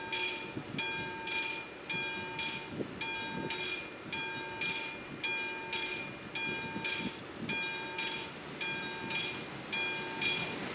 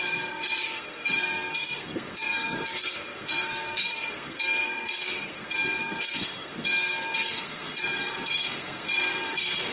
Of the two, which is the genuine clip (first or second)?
first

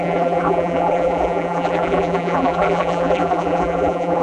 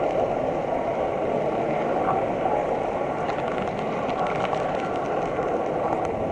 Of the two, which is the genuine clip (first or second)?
second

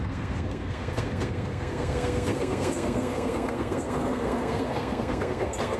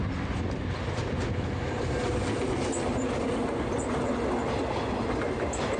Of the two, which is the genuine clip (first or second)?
second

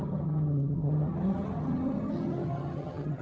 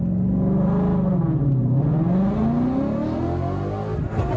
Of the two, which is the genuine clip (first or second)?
second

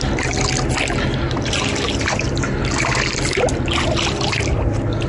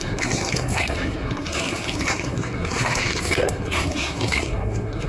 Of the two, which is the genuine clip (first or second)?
first